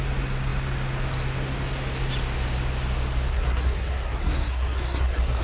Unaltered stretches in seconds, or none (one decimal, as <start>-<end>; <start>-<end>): 0.0-3.3

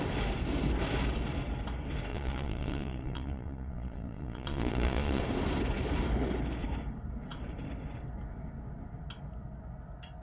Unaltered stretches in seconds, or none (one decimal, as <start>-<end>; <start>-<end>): 0.0-2.1; 5.2-10.2

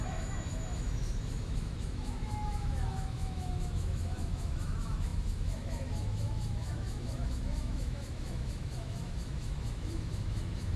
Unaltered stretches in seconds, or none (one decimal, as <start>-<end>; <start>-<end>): none

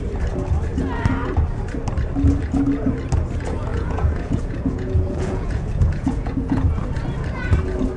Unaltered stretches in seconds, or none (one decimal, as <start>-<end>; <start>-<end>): 0.0-3.7; 6.6-8.0

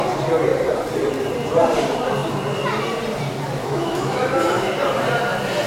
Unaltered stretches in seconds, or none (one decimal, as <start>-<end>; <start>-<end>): 0.0-3.6; 4.5-5.7

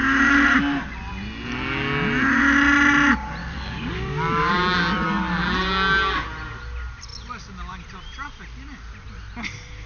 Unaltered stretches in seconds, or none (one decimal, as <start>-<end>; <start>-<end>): 0.0-3.4; 4.5-9.9